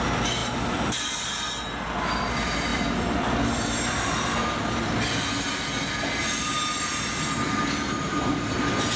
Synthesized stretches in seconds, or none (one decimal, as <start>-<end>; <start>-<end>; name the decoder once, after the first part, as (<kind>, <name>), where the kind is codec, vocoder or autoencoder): 0.4-1.3 (vocoder, BigVGAN v2); 2.7-5.3